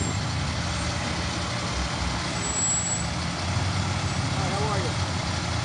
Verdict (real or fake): real